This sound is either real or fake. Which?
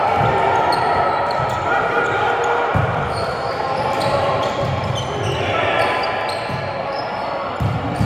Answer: real